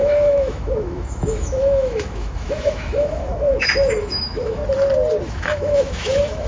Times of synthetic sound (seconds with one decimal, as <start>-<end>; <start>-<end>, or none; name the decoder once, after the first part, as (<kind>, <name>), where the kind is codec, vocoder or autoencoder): 0.0-4.6 (autoencoder, DAC-VAE); 5.3-6.5